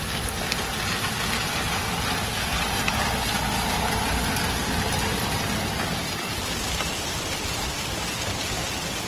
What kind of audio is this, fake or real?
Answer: real